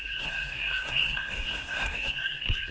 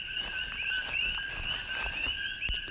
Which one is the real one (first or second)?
second